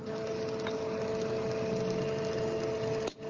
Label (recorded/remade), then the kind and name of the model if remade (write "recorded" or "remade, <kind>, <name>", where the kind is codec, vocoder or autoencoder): recorded